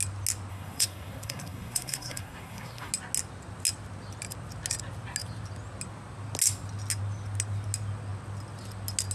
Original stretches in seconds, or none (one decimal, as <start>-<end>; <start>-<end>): 0.0-0.5; 2.9-9.1